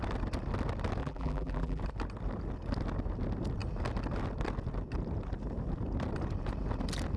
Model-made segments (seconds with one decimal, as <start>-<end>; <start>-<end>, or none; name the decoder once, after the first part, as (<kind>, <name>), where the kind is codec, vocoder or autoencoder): 1.0-1.8 (vocoder, BigVGAN v2)